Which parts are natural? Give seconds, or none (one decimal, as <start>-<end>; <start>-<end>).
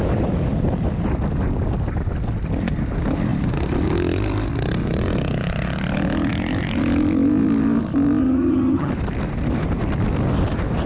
0.0-8.2; 8.9-10.9